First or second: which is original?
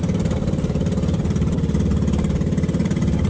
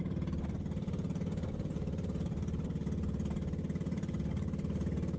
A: second